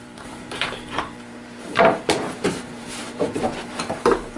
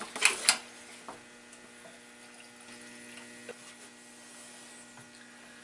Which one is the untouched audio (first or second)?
second